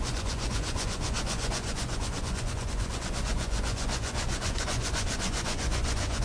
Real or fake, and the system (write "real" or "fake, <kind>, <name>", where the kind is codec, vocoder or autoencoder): fake, vocoder, Vocos